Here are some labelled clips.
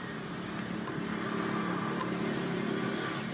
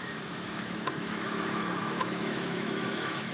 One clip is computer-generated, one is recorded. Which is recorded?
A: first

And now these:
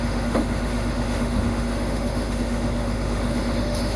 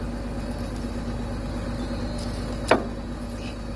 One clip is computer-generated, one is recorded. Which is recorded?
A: second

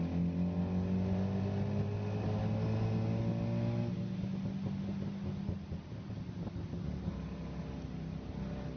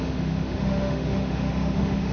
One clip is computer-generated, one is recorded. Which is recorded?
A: first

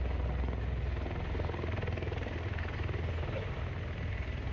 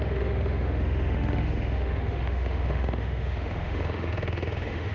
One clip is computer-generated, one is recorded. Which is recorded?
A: first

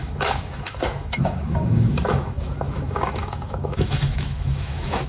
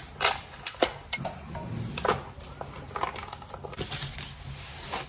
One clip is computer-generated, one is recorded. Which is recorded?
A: second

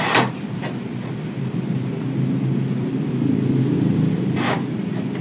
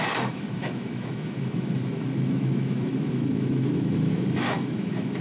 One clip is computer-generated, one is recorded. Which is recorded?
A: first